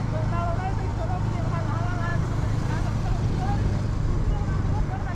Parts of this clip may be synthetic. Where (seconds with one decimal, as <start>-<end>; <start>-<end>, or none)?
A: 2.1-2.8